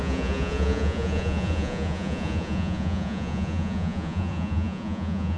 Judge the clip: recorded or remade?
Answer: remade